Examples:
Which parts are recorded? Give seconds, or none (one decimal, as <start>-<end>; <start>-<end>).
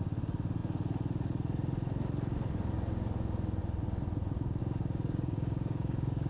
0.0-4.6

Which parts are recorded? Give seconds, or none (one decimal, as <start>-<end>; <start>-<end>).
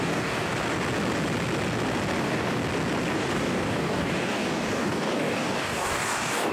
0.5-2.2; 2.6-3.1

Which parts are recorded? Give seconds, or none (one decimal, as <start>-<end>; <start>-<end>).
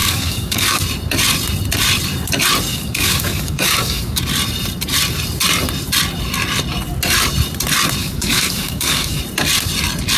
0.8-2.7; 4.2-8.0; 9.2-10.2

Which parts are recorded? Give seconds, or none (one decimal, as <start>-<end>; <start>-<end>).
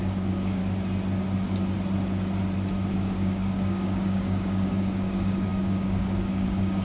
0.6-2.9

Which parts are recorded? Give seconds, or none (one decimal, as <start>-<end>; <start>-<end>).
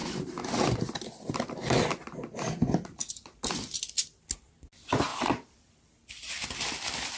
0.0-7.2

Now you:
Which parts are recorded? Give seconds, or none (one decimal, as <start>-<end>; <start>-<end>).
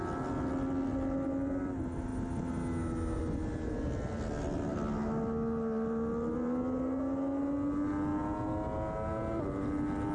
0.0-10.1